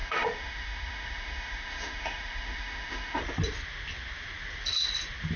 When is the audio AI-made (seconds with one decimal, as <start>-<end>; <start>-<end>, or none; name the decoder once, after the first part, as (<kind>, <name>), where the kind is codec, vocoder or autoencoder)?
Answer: 0.0-3.2 (autoencoder, DAC-VAE)